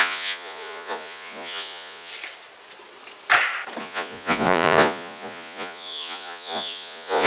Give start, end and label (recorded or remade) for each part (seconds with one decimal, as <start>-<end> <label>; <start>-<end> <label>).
0.0-2.1 remade; 2.1-3.8 recorded; 3.8-7.3 remade